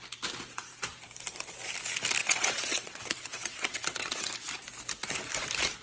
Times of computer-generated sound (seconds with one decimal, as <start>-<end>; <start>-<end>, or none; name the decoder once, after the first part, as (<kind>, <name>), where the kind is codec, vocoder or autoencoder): 2.2-4.3 (vocoder, WaveNeXt)